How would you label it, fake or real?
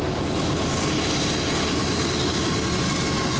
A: real